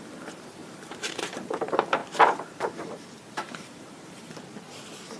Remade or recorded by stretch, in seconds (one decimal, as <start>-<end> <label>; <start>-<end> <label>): 0.0-0.6 recorded; 0.6-1.5 remade; 1.5-2.0 recorded; 2.0-4.3 remade; 4.3-5.2 recorded